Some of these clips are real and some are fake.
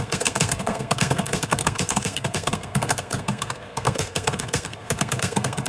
fake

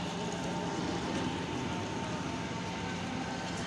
real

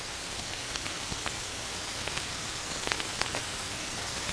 fake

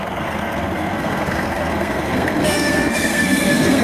fake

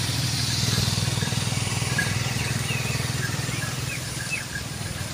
fake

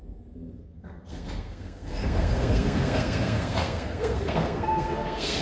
fake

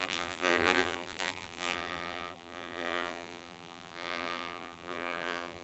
fake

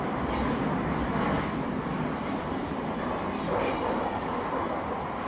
real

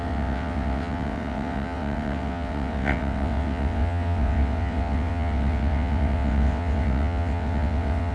fake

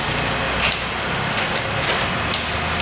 real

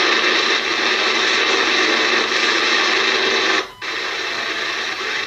real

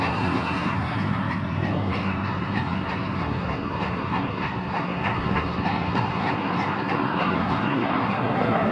fake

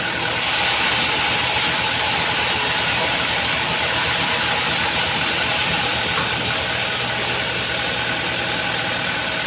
real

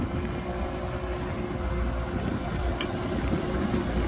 real